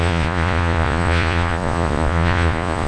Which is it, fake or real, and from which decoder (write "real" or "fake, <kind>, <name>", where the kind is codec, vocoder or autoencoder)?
fake, vocoder, Vocos